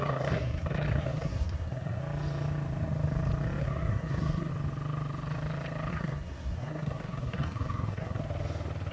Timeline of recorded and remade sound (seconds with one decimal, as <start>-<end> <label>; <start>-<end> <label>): 0.0-2.0 remade; 2.0-3.6 recorded; 3.6-4.5 remade; 4.5-5.9 recorded; 5.9-8.2 remade; 8.2-8.9 recorded